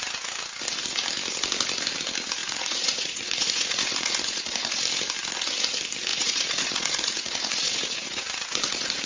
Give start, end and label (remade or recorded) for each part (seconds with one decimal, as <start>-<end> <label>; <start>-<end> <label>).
0.0-2.4 recorded; 2.4-4.8 remade; 4.8-6.1 recorded; 6.1-9.1 remade

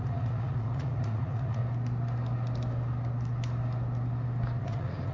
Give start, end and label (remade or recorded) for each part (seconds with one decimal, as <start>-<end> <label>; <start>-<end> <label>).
0.0-1.6 remade; 1.6-4.6 recorded; 4.6-5.1 remade

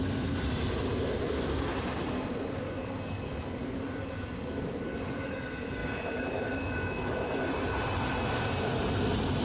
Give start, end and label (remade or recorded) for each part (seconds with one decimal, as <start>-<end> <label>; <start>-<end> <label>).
0.0-9.4 recorded

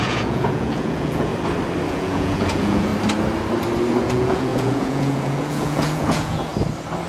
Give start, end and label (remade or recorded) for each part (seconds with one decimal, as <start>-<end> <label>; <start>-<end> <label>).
0.0-1.3 remade; 1.3-1.9 recorded; 1.9-2.9 remade; 2.9-4.0 recorded; 4.0-6.5 remade; 6.5-7.1 recorded

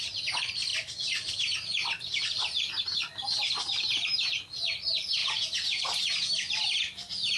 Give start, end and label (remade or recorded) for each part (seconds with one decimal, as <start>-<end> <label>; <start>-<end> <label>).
0.0-5.2 recorded; 5.2-5.8 remade; 5.8-7.4 recorded